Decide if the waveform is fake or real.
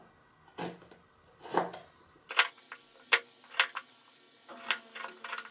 real